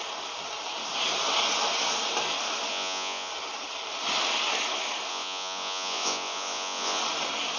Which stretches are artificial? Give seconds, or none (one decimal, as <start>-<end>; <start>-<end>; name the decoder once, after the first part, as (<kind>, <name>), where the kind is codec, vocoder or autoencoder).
2.7-3.3 (vocoder, Vocos); 5.1-7.0